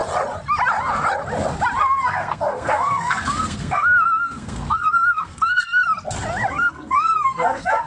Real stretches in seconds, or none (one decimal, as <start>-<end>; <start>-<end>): 0.0-1.8; 5.8-6.5